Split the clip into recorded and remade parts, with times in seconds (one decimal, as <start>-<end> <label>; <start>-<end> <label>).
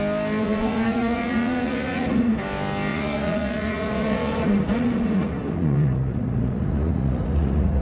0.0-0.4 recorded; 0.4-2.3 remade; 2.3-2.9 recorded; 2.9-7.8 remade